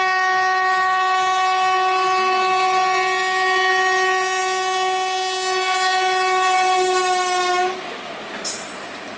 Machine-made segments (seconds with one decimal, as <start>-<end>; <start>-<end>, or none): none